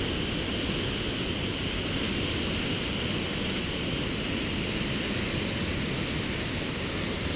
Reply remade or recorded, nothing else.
recorded